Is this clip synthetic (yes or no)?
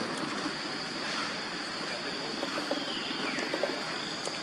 no